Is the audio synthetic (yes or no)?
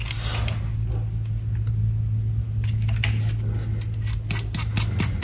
no